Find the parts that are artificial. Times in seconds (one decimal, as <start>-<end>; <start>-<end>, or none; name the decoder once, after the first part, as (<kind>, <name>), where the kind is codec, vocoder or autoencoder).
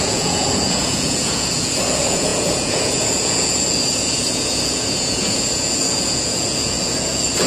0.0-7.5 (vocoder, Vocos)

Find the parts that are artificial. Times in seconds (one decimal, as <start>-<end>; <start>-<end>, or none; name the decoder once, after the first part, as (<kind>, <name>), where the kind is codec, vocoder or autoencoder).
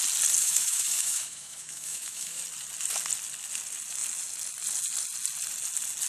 0.4-2.4 (autoencoder, DAC-VAE)